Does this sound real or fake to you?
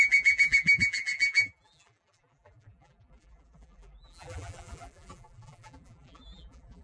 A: fake